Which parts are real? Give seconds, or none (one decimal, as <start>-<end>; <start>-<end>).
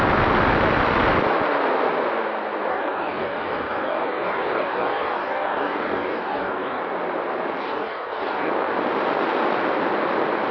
0.0-2.7; 6.8-7.6; 8.5-10.5